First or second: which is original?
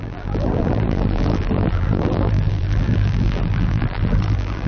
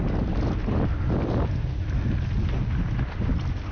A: second